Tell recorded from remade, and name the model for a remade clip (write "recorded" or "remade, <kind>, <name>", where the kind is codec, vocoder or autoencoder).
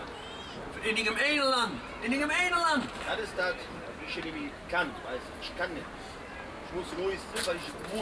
recorded